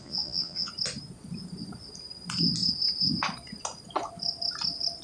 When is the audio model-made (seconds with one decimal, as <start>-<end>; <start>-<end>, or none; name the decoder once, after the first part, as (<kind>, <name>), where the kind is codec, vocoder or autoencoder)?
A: 0.0-0.7 (vocoder, Vocos)

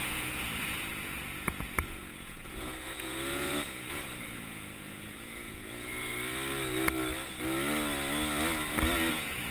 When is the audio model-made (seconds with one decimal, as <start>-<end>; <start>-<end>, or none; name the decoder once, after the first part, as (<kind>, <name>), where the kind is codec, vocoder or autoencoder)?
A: 0.0-6.1 (vocoder, Vocos); 9.1-9.5